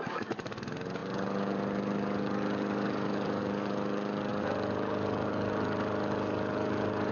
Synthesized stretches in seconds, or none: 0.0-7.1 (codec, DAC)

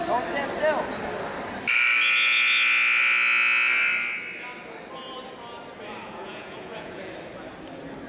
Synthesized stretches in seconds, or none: 6.2-7.0 (vocoder, Vocos)

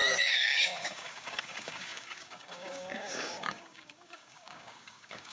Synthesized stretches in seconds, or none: 0.0-5.3 (codec, DAC)

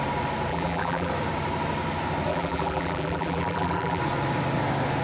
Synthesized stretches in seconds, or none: 0.5-1.1 (vocoder, BigVGAN v2); 2.3-4.0

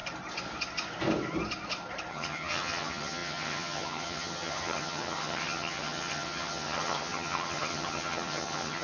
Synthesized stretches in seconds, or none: 2.1-8.8 (vocoder, HiFi-GAN)

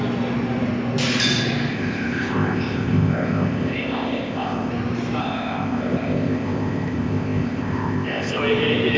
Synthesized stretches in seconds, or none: 1.7-4.7 (codec, ZipCodec); 5.2-8.4

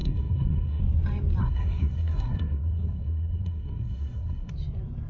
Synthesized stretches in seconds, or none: 0.0-0.8 (codec, SNAC); 1.4-4.5